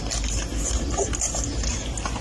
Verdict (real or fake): real